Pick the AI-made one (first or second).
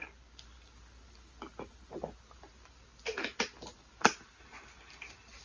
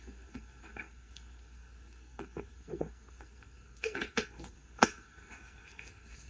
second